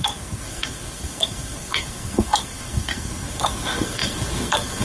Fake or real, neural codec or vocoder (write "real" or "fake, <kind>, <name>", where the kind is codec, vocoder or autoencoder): fake, codec, SNAC